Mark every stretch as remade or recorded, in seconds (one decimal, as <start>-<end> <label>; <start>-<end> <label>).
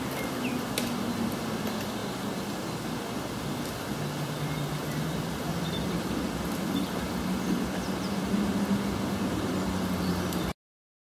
0.0-11.1 recorded